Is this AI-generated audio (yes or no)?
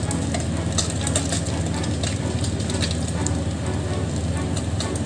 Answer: no